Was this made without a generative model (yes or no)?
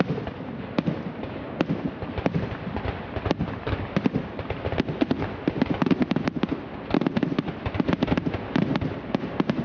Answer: yes